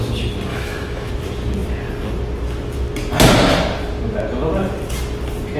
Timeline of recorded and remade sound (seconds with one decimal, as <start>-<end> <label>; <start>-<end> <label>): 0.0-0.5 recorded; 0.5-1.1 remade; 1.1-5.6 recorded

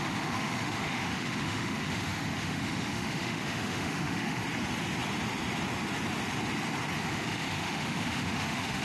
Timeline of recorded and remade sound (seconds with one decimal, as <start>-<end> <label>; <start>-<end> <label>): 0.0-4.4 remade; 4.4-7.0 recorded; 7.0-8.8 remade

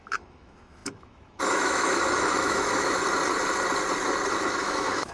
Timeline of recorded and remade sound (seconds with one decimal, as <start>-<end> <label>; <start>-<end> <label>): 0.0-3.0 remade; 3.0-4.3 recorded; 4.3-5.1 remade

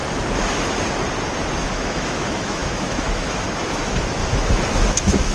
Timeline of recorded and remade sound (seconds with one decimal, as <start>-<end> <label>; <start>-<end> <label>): 0.0-1.6 recorded; 1.6-5.3 remade